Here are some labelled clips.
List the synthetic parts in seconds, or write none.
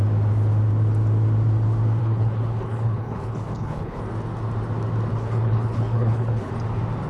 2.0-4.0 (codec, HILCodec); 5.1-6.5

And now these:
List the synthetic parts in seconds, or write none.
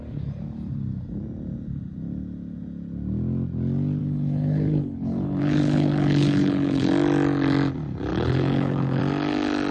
4.0-6.9 (codec, HILCodec); 8.1-9.0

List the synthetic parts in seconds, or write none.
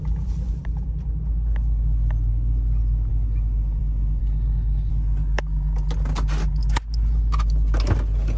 4.2-4.9 (codec, HILCodec)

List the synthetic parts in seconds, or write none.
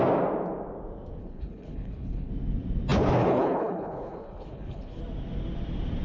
1.2-2.3 (codec, HILCodec); 3.2-5.0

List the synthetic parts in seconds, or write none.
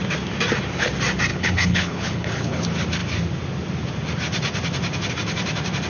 1.3-2.6 (codec, HILCodec)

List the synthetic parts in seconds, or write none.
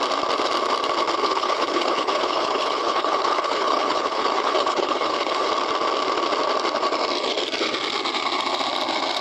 1.2-5.5 (codec, HILCodec)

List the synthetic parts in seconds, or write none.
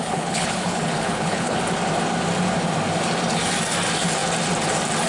0.0-1.6 (codec, HILCodec)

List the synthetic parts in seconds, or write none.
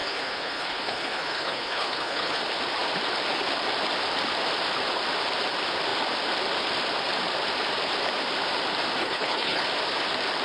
0.0-2.4 (codec, HILCodec); 9.0-9.6